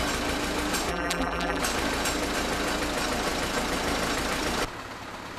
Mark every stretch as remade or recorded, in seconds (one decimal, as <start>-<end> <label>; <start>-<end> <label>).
0.0-0.9 recorded; 0.9-1.6 remade; 1.6-5.4 recorded